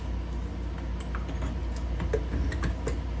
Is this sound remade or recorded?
recorded